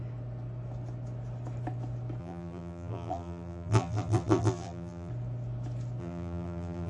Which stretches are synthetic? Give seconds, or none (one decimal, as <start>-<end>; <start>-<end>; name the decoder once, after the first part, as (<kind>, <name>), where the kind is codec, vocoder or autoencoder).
2.2-5.1 (vocoder, BigVGAN v2); 6.0-6.9